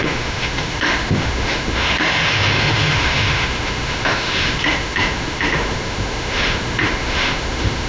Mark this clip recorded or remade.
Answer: remade